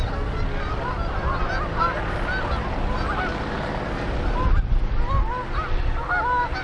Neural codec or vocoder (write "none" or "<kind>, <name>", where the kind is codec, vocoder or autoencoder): none